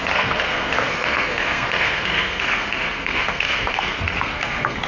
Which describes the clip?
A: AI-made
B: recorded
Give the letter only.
A